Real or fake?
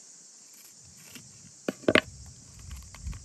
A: real